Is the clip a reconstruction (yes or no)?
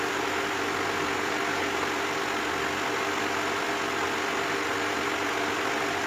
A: no